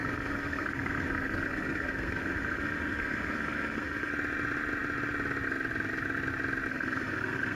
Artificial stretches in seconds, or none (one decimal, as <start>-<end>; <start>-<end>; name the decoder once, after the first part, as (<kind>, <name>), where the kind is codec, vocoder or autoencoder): 0.0-4.1 (codec, SNAC); 6.7-7.6